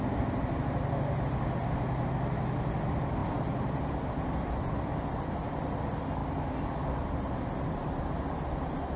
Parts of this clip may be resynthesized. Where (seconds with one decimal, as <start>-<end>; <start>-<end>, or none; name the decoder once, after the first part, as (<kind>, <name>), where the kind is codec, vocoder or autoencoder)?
none